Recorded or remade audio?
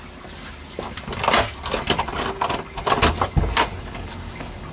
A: recorded